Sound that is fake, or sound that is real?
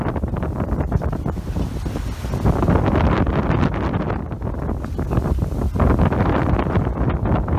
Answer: real